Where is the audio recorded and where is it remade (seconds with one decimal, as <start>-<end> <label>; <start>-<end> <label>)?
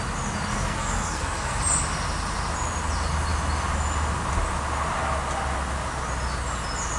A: 0.0-0.5 recorded; 0.5-1.6 remade; 1.6-7.0 recorded